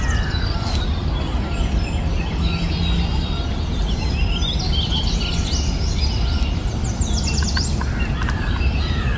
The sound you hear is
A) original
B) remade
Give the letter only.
A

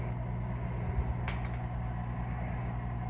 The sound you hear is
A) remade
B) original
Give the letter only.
B